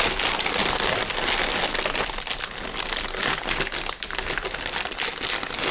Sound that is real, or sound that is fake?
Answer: real